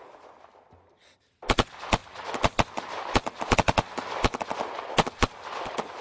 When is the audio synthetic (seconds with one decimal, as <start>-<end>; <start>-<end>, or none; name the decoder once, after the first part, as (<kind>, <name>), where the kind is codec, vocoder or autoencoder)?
none